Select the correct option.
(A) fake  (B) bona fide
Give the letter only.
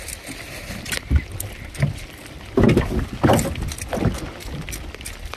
B